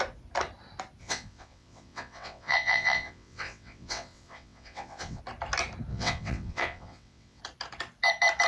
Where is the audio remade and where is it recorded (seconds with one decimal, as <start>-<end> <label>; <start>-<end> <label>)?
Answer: 0.0-1.0 recorded; 1.0-5.2 remade; 5.2-5.9 recorded; 5.9-7.4 remade; 7.4-8.5 recorded